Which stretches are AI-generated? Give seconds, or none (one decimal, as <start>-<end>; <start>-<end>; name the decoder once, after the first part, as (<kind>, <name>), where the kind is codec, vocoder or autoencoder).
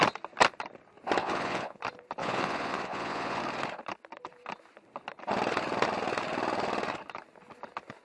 1.2-1.8 (vocoder, Vocos); 2.2-3.4